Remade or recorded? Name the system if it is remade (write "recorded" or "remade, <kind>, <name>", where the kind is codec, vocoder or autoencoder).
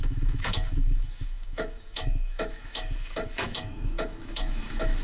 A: remade, autoencoder, DAC-VAE